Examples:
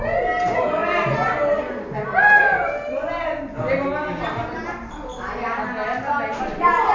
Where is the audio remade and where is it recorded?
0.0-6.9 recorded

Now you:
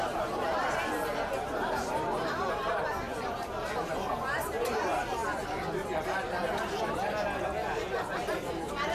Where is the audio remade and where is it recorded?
0.0-8.9 recorded

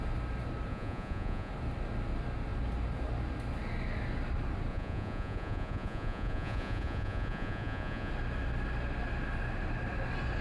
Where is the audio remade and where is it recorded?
0.0-0.7 recorded; 0.7-1.5 remade; 1.5-4.7 recorded; 4.7-8.1 remade; 8.1-10.4 recorded

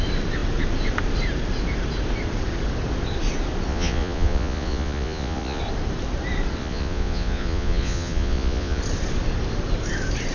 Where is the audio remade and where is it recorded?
0.0-3.7 recorded; 3.7-5.6 remade; 5.6-6.6 recorded; 6.6-8.8 remade; 8.8-10.3 recorded

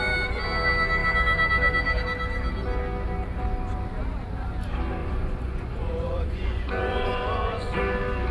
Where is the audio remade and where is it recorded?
0.0-5.0 recorded; 5.0-7.8 remade; 7.8-8.3 recorded

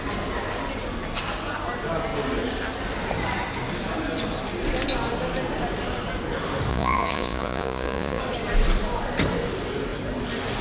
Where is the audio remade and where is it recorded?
0.0-6.7 recorded; 6.7-8.2 remade; 8.2-10.6 recorded

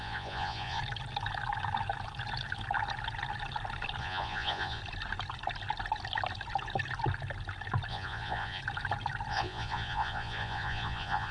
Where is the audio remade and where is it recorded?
0.0-0.8 remade; 0.8-4.0 recorded; 4.0-4.8 remade; 4.8-7.9 recorded; 7.9-8.6 remade; 8.6-9.3 recorded; 9.3-11.3 remade

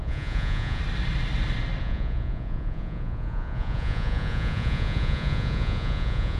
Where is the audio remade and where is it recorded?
0.0-0.8 remade; 0.8-1.8 recorded; 1.8-6.4 remade